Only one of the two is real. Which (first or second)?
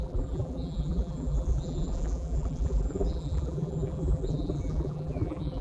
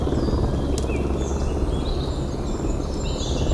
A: second